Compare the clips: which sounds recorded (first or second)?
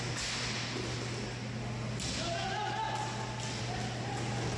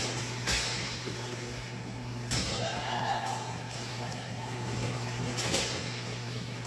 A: first